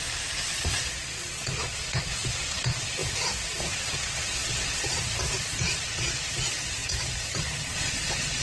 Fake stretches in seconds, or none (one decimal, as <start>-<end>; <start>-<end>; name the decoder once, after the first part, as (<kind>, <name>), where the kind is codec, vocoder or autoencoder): 0.0-8.4 (vocoder, Vocos)